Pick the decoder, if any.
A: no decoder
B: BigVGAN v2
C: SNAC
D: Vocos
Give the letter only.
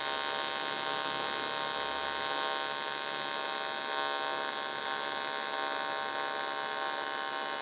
A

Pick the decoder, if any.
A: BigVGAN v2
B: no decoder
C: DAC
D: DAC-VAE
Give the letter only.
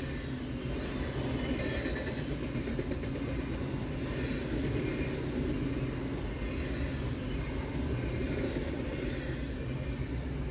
B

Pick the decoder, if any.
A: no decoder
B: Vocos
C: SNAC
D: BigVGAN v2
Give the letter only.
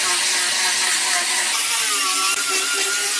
A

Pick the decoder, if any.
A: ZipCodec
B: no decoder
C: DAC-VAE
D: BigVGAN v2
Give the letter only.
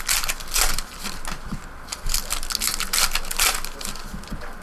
B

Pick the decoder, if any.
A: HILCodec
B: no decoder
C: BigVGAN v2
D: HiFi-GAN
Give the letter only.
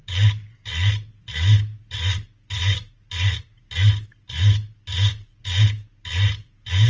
B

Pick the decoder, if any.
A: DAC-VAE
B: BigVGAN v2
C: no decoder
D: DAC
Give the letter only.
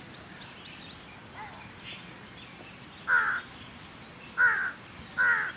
C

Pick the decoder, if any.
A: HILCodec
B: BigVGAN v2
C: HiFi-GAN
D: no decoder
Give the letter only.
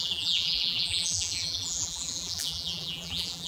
B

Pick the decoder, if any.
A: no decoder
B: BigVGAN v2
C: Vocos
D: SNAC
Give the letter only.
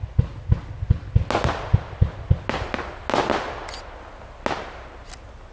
A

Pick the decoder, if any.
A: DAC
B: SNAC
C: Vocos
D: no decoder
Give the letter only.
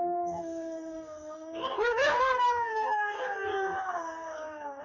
A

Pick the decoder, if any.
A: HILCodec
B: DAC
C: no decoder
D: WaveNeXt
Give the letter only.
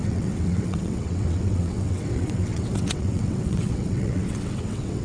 D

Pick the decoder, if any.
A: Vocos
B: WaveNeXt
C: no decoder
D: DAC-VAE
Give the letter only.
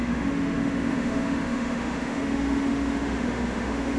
D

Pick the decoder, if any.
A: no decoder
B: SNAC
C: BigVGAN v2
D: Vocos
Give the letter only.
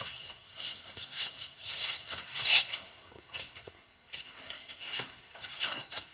B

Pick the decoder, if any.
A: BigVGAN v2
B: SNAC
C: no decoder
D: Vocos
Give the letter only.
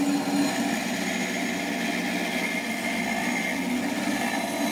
C